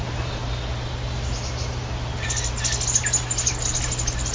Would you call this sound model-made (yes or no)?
no